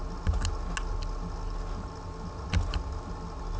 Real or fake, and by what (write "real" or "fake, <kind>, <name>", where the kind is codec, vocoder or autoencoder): real